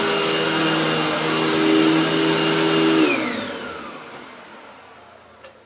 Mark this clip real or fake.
real